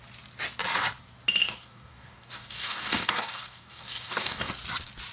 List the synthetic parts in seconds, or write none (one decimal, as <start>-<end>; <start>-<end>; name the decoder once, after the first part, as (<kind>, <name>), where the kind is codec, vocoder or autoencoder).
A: 1.4-4.5 (codec, DAC)